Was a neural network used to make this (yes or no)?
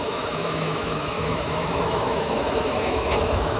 yes